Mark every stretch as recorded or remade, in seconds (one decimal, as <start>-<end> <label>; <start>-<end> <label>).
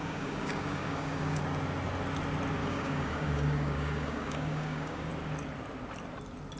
0.0-1.4 remade; 1.4-2.6 recorded; 2.6-5.1 remade; 5.1-6.6 recorded